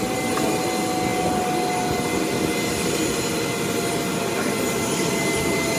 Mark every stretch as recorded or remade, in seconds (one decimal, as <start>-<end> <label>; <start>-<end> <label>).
0.0-5.8 recorded